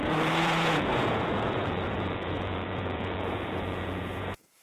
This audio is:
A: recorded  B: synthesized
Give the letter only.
B